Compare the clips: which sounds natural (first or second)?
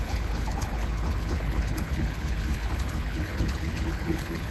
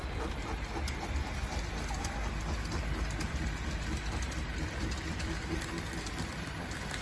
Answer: second